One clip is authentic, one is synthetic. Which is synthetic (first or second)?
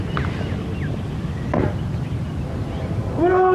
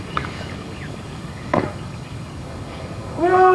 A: second